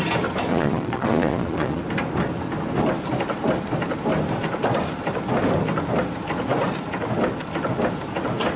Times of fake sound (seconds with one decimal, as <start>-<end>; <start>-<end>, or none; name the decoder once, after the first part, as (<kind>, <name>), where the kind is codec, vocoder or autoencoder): 0.5-1.8 (vocoder, Vocos)